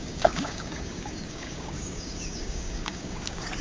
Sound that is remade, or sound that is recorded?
remade